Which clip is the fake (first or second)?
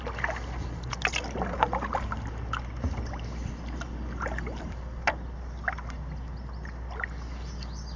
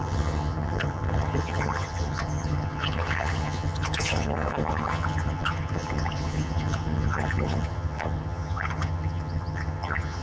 second